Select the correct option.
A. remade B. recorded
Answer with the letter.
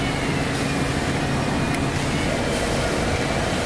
B